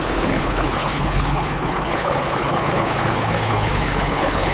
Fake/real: fake